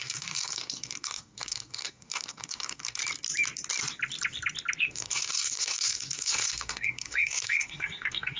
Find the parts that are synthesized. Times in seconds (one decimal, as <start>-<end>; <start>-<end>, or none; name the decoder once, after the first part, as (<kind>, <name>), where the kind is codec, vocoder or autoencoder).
0.0-3.0 (codec, SNAC); 4.9-8.4